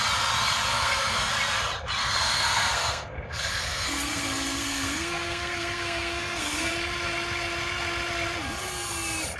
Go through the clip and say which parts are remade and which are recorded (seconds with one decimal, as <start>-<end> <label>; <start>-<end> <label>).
0.0-0.7 recorded; 0.7-1.3 remade; 1.3-2.0 recorded; 2.0-6.7 remade; 6.7-9.4 recorded